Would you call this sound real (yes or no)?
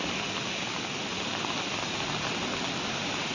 yes